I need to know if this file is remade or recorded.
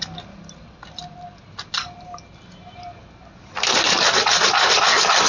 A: recorded